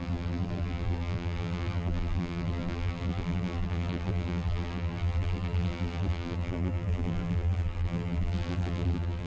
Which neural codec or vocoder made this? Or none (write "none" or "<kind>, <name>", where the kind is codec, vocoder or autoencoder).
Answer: vocoder, BigVGAN v2